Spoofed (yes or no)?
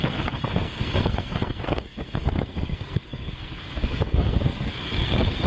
yes